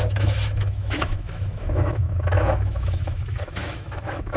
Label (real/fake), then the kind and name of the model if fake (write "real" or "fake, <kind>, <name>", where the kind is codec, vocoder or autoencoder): fake, autoencoder, DAC-VAE